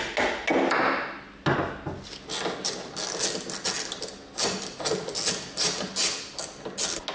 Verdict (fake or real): real